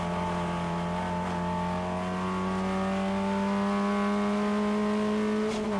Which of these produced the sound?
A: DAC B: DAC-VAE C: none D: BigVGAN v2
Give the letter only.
C